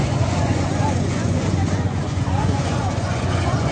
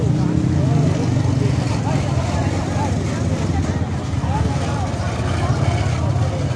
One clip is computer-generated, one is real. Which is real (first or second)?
second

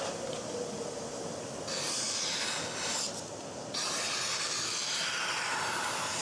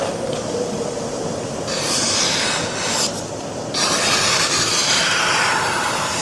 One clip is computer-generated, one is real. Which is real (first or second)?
first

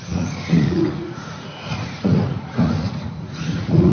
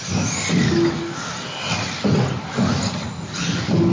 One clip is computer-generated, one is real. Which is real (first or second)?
second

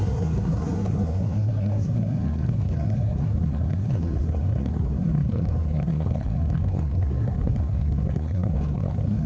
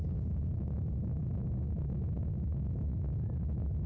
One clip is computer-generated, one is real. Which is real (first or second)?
second